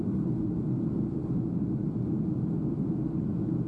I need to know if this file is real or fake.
real